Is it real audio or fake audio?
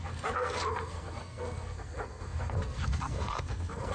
fake